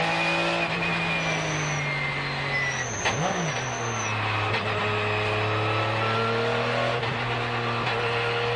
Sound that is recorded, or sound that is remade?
recorded